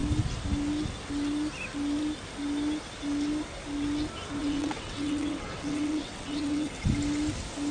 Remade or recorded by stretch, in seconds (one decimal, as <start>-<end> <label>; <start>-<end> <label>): 0.0-4.4 recorded; 4.4-6.7 remade; 6.7-7.7 recorded